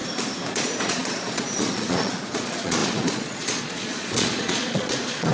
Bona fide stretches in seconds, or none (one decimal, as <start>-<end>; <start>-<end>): 0.0-0.5